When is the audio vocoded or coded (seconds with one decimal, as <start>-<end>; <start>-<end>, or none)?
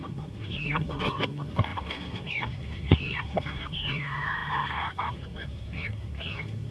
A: 0.0-6.7